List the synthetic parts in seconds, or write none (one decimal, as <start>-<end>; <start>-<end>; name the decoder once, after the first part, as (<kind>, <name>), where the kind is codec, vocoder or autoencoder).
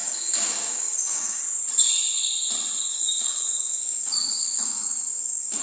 0.0-1.4 (codec, DAC); 2.9-5.6